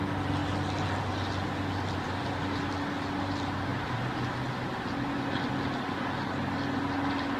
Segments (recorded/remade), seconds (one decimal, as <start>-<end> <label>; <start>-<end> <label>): 0.0-3.7 recorded; 3.7-4.2 remade; 4.2-7.4 recorded